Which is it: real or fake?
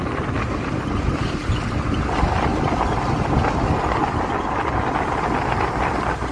real